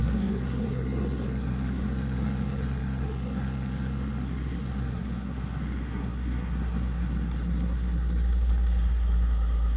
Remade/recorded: remade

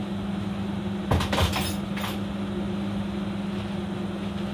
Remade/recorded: recorded